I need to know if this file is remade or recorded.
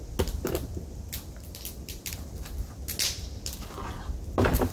recorded